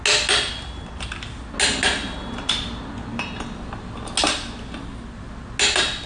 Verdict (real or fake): real